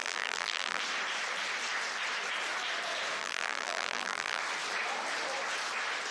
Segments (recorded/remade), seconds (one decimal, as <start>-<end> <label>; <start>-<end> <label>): 0.0-0.8 remade; 0.8-3.2 recorded; 3.2-4.4 remade; 4.4-6.1 recorded